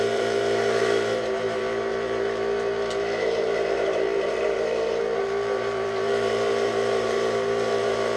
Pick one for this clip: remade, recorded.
remade